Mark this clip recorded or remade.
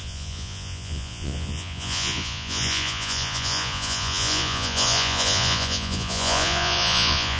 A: remade